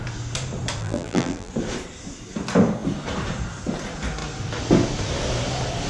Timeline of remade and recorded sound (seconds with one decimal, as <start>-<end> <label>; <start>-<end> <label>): 0.0-0.8 recorded; 0.8-1.5 remade; 1.5-5.9 recorded